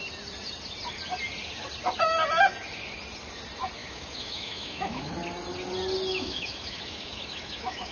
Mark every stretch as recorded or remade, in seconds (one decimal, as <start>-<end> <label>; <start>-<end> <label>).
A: 0.0-3.8 recorded; 3.8-5.1 remade; 5.1-6.1 recorded; 6.1-7.9 remade